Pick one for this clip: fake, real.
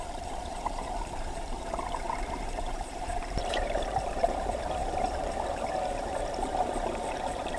fake